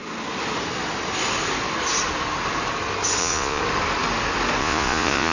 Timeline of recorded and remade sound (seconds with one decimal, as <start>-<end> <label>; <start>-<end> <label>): 0.0-3.2 recorded; 3.2-3.6 remade; 3.6-4.6 recorded; 4.6-5.3 remade